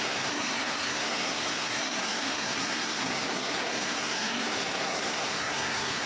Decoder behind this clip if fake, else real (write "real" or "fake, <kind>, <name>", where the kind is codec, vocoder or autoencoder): fake, codec, SNAC